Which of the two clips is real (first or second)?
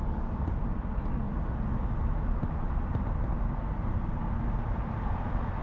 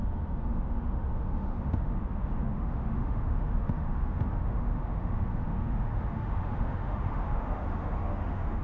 first